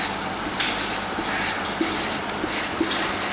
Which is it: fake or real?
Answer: real